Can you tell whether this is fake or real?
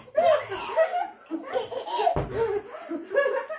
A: real